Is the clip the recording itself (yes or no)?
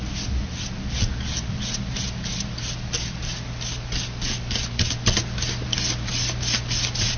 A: yes